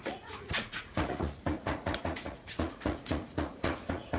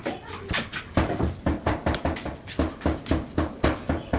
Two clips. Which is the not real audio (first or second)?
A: first